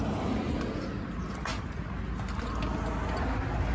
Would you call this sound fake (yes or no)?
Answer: no